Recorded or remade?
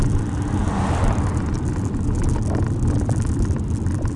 recorded